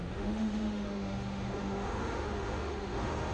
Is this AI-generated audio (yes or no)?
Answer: yes